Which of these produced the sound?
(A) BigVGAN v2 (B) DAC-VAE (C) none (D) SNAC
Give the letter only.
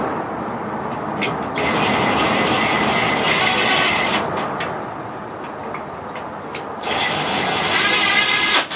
C